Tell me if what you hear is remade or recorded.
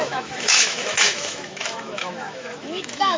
remade